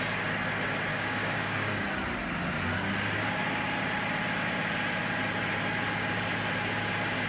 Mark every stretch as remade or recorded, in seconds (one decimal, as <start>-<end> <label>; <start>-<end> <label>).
0.0-0.9 recorded; 0.9-1.8 remade; 1.8-7.3 recorded